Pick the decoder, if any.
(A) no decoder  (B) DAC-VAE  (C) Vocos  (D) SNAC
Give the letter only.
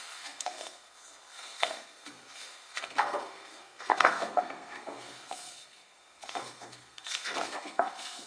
D